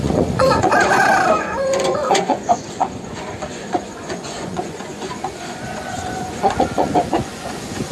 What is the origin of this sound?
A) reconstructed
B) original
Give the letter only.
A